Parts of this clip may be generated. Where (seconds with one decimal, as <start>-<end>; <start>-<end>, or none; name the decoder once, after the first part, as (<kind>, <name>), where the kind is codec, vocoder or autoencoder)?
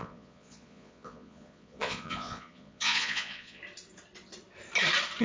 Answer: 0.0-3.6 (vocoder, Vocos)